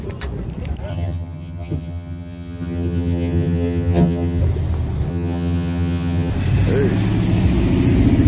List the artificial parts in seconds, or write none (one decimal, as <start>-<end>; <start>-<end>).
0.9-4.4; 5.1-6.3